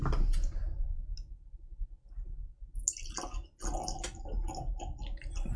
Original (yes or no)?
yes